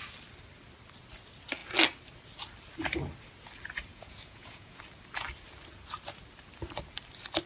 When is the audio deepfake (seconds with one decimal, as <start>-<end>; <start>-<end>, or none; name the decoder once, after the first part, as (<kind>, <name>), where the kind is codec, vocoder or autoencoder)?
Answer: 3.9-4.8 (vocoder, Vocos)